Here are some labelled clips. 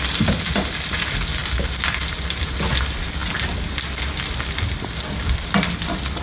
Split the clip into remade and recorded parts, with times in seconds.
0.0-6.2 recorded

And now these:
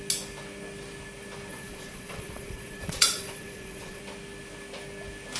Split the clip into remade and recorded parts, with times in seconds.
0.0-1.5 recorded; 1.5-4.0 remade; 4.0-5.4 recorded

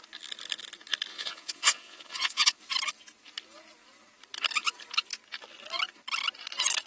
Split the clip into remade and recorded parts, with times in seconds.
0.0-1.1 recorded; 1.1-2.6 remade; 2.6-6.9 recorded

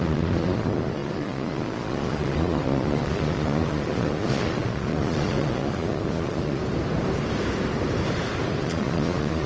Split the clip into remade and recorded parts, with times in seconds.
0.0-6.6 remade; 6.6-8.6 recorded; 8.6-9.5 remade

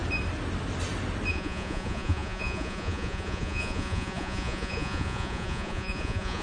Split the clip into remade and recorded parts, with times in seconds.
0.0-1.3 recorded; 1.3-6.4 remade